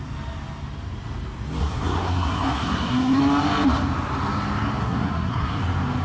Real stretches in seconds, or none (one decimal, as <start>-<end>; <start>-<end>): 0.0-1.6; 3.2-4.8; 5.6-6.0